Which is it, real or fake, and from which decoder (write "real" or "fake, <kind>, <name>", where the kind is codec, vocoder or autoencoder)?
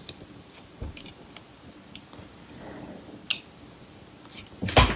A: real